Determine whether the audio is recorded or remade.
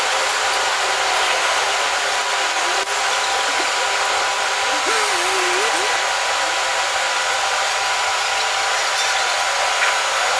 recorded